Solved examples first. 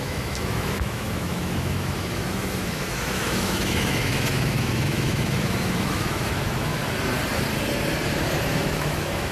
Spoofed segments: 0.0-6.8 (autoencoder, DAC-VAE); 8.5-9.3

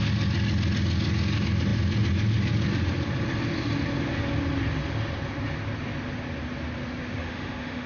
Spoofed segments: 7.2-7.9 (autoencoder, DAC-VAE)

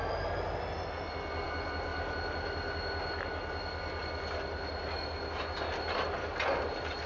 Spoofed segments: none

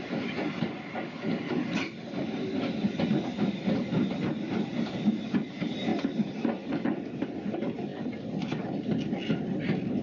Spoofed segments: none

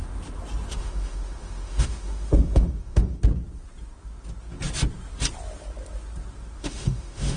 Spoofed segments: 0.7-3.2 (autoencoder, DAC-VAE); 6.6-7.4

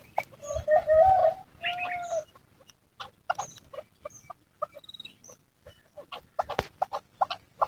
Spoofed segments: none

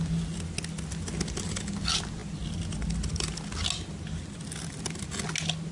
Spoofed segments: none

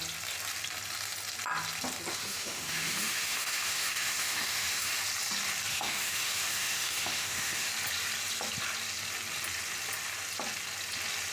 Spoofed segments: 2.1-5.0 (autoencoder, DAC-VAE); 5.7-7.7